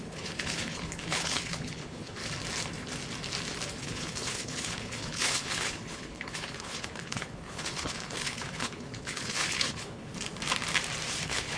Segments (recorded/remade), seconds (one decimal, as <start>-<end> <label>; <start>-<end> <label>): 0.0-2.2 remade; 2.2-3.8 recorded; 3.8-10.1 remade; 10.1-11.2 recorded; 11.2-11.6 remade